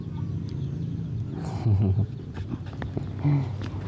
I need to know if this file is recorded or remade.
recorded